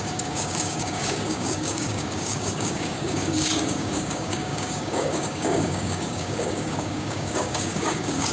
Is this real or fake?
fake